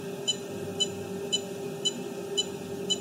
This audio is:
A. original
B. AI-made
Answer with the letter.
A